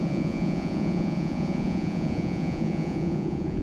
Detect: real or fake fake